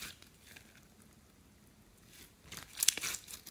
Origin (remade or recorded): recorded